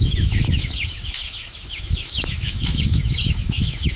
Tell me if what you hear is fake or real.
fake